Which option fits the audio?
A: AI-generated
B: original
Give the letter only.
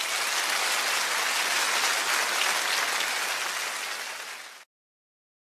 B